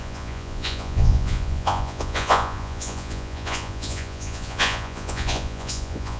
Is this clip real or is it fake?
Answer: fake